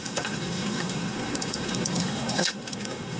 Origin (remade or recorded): remade